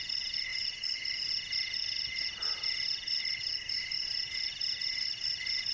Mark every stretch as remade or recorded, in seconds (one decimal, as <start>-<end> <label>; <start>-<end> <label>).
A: 0.0-5.7 recorded